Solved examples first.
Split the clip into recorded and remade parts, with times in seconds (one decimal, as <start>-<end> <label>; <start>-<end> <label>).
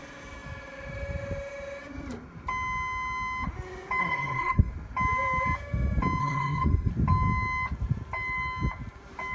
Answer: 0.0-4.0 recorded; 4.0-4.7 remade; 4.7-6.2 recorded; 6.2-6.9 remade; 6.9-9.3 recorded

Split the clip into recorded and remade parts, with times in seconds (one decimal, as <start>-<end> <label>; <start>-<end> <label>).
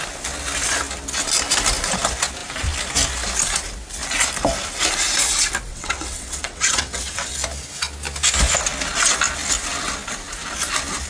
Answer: 0.0-5.7 recorded; 5.7-7.3 remade; 7.3-11.1 recorded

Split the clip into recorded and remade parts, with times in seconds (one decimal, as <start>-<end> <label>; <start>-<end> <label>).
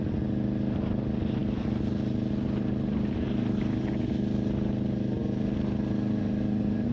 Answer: 0.0-6.9 recorded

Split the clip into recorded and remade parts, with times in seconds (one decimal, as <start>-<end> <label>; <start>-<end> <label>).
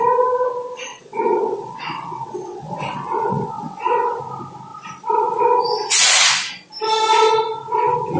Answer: 0.0-0.9 recorded; 0.9-4.2 remade; 4.2-8.2 recorded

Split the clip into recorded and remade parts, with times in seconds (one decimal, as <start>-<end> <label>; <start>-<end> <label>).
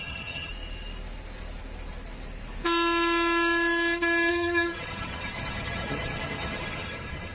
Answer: 0.0-0.5 remade; 0.5-4.3 recorded; 4.3-7.3 remade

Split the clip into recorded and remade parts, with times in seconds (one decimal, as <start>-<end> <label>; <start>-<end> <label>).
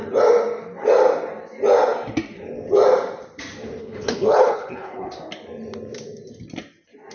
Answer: 0.0-3.8 recorded; 3.8-5.1 remade; 5.1-7.1 recorded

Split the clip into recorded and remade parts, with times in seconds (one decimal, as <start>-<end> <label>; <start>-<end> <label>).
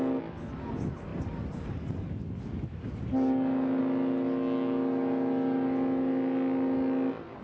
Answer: 0.0-7.4 recorded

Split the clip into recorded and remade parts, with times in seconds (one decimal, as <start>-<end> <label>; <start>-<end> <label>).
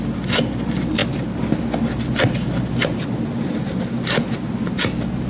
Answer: 0.0-5.3 recorded